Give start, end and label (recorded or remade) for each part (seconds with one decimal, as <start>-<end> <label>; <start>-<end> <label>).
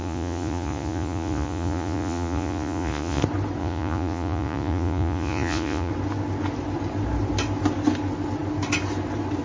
0.0-3.2 remade; 3.2-3.6 recorded; 3.6-5.9 remade; 5.9-9.4 recorded